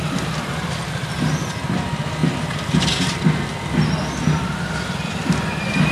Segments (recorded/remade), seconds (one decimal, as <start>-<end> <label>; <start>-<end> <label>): 0.0-5.9 recorded